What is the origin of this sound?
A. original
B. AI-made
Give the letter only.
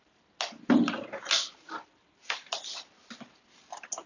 A